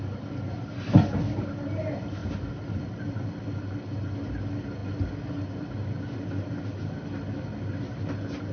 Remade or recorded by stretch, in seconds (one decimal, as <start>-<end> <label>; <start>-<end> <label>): 0.0-8.5 recorded